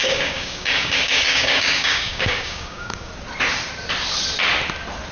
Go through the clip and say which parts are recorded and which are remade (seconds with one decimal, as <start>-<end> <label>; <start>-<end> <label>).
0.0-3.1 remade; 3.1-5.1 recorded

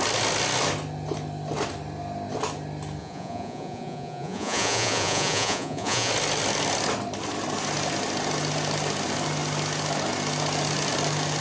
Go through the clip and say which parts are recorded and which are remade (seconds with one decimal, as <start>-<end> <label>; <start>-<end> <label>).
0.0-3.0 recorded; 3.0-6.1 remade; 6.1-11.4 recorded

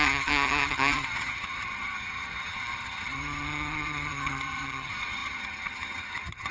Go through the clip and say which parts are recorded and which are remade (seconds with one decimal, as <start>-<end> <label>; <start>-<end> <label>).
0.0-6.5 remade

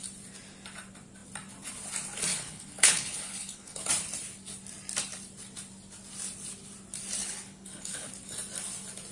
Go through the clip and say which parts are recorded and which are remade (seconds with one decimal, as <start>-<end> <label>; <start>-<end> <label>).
0.0-2.3 recorded; 2.3-3.9 remade; 3.9-7.2 recorded; 7.2-8.1 remade; 8.1-9.1 recorded